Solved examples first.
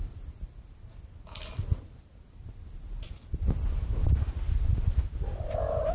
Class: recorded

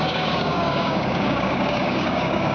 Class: remade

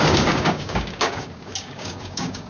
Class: remade